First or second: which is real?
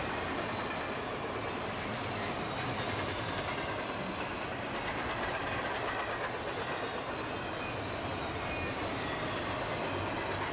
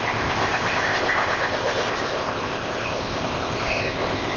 first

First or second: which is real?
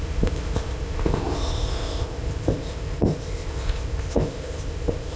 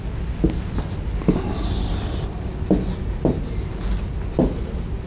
second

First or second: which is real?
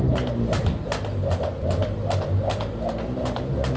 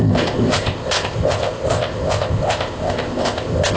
first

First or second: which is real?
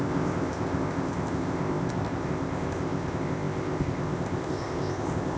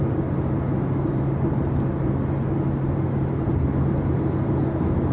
second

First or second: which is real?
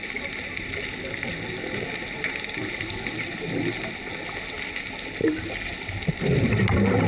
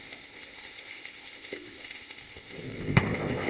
first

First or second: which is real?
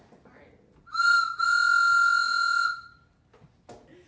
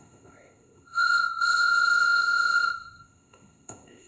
first